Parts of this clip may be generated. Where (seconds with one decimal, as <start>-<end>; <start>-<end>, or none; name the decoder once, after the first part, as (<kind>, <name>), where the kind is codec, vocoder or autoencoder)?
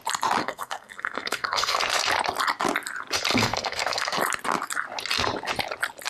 0.4-1.8 (codec, SNAC); 3.3-4.2